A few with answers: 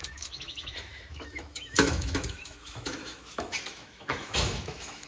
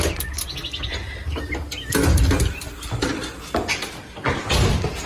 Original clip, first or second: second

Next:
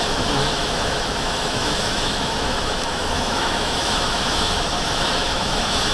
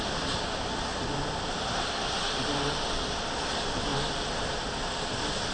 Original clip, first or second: second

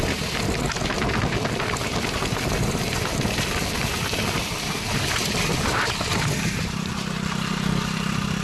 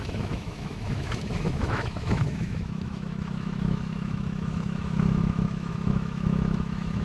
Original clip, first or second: first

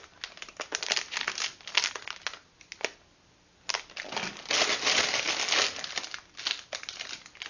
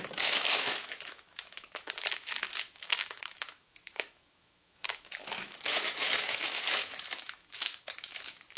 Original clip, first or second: first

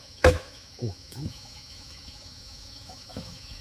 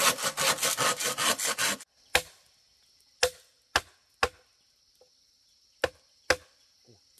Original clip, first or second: second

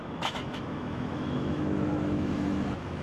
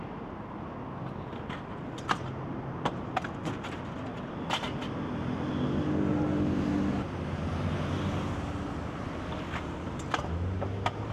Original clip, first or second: second